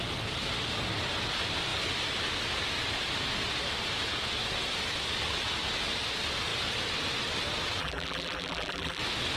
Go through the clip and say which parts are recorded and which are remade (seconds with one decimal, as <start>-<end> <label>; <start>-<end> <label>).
0.0-7.8 recorded; 7.8-9.0 remade; 9.0-9.4 recorded